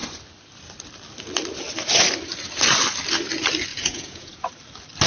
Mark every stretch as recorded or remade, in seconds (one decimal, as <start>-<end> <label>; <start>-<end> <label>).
0.0-3.7 recorded; 3.7-4.5 remade; 4.5-5.1 recorded